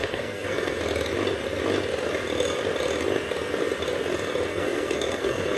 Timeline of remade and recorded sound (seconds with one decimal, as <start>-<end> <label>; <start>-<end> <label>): 0.0-0.8 remade; 0.8-4.5 recorded; 4.5-5.6 remade